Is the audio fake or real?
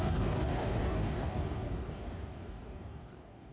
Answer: fake